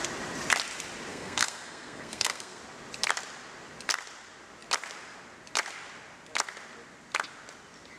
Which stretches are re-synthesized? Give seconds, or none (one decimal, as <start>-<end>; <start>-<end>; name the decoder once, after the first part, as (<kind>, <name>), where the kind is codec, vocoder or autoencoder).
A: 1.1-2.6 (codec, SNAC)